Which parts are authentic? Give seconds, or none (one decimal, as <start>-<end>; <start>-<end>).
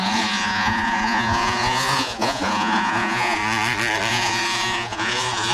3.4-4.1